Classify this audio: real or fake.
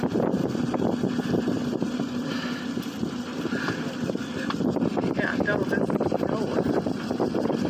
real